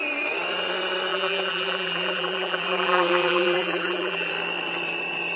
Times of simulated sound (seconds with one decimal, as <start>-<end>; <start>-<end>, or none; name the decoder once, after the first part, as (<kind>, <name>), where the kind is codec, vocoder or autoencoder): 1.1-4.3 (vocoder, BigVGAN v2)